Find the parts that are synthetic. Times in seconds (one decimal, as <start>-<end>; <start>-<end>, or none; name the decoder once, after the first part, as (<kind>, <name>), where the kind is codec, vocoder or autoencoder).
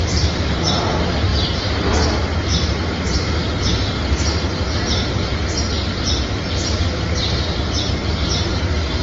0.0-1.3 (vocoder, BigVGAN v2); 6.5-9.0